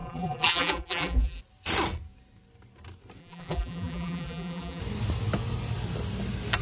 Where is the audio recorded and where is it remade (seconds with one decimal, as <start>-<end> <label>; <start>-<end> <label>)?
0.0-1.4 remade; 1.4-3.2 recorded; 3.2-4.8 remade; 4.8-6.6 recorded

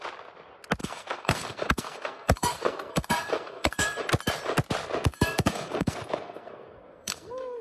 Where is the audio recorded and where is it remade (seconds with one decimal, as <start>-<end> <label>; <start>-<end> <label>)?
0.0-0.8 recorded; 0.8-4.0 remade; 4.0-5.1 recorded; 5.1-7.6 remade

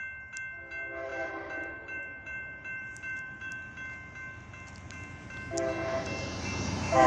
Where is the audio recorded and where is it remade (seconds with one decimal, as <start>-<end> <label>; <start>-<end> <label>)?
0.0-1.1 recorded; 1.1-3.5 remade; 3.5-7.1 recorded